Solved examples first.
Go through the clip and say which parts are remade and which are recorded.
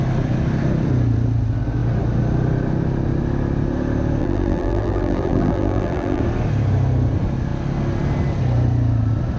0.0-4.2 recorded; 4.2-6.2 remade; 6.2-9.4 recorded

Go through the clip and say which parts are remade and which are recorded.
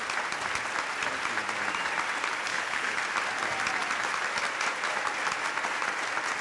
0.0-2.5 recorded; 2.5-3.0 remade; 3.0-6.4 recorded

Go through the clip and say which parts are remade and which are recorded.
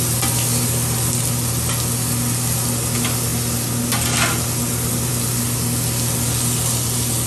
0.0-7.3 recorded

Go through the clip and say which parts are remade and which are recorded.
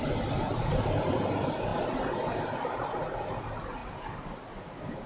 0.0-5.1 recorded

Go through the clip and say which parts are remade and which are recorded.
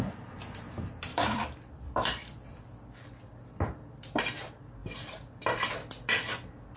0.0-1.1 recorded; 1.1-3.0 remade; 3.0-4.8 recorded; 4.8-5.4 remade; 5.4-6.8 recorded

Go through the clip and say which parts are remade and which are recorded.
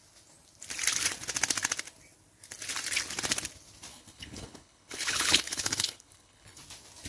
0.0-3.9 recorded; 3.9-6.6 remade; 6.6-7.1 recorded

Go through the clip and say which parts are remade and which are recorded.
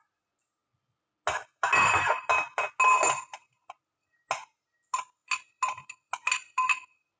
0.0-7.2 recorded